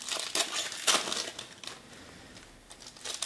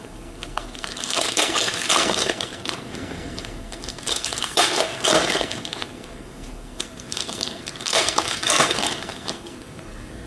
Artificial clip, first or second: second